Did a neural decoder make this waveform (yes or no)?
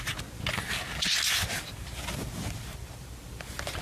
no